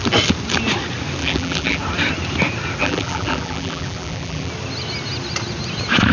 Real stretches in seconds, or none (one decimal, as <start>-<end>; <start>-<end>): 0.0-1.2; 1.8-2.8; 4.5-6.1